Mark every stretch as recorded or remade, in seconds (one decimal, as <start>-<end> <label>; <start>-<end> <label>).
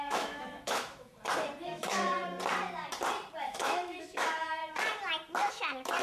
0.0-1.1 remade; 1.1-1.6 recorded; 1.6-2.1 remade; 2.1-3.5 recorded; 3.5-4.6 remade; 4.6-5.5 recorded; 5.5-6.0 remade